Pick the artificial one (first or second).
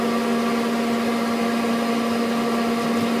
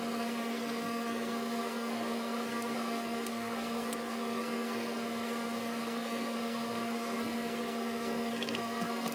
second